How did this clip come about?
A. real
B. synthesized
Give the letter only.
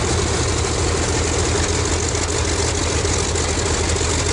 A